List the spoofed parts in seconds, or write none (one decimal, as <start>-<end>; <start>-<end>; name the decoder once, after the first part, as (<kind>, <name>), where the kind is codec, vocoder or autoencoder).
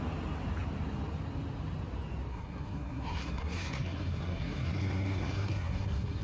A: 2.3-6.2 (codec, SNAC)